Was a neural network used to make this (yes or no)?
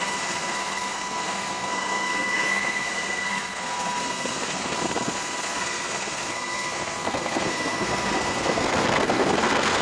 yes